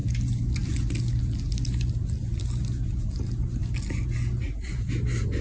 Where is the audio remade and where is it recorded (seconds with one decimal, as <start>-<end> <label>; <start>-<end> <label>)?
0.0-5.4 recorded

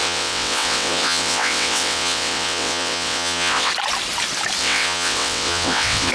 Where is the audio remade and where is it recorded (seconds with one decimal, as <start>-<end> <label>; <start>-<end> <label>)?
0.0-3.7 remade; 3.7-4.6 recorded; 4.6-6.1 remade

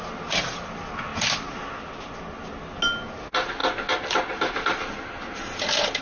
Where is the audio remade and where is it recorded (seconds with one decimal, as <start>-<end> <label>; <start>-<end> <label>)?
0.0-6.0 recorded

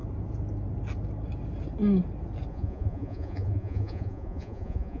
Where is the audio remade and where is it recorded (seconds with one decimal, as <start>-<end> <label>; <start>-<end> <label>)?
0.0-2.5 recorded; 2.5-5.0 remade

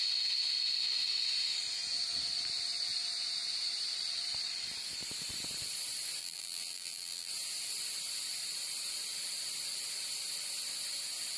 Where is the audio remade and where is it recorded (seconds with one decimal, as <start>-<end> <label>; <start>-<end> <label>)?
0.0-6.2 recorded; 6.2-7.3 remade; 7.3-11.4 recorded

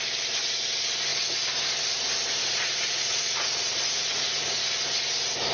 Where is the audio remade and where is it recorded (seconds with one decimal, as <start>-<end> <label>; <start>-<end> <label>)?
0.0-2.4 recorded; 2.4-4.6 remade; 4.6-5.5 recorded